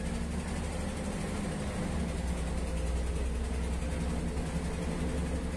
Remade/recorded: recorded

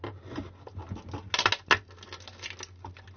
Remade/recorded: recorded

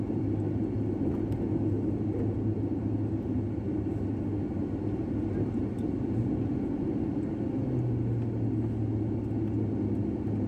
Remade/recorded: recorded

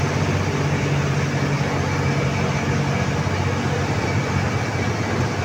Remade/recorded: recorded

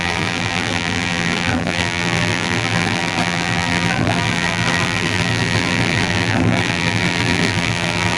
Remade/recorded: remade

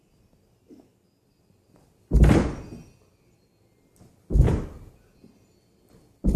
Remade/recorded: recorded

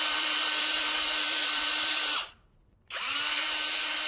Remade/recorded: remade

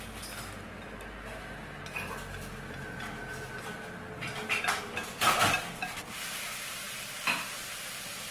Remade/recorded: recorded